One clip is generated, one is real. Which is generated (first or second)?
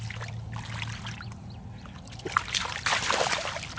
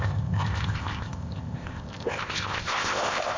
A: second